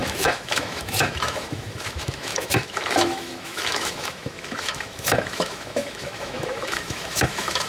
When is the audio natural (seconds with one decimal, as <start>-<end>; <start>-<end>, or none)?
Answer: none